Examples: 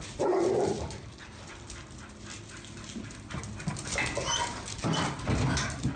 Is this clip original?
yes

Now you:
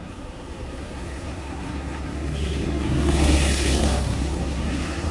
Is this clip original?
no